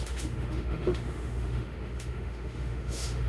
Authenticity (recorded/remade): remade